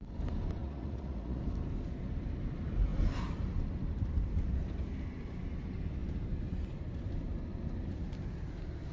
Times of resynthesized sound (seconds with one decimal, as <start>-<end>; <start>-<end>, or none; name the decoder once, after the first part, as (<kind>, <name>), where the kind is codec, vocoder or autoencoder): 0.6-1.4 (vocoder, Vocos)